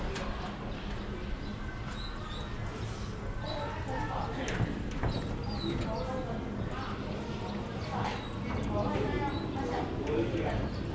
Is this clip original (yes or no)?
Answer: yes